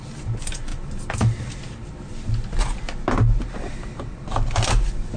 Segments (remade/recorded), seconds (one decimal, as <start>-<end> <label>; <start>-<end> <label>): 0.0-5.2 recorded